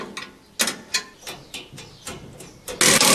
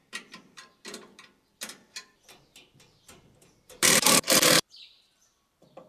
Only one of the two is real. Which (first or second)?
first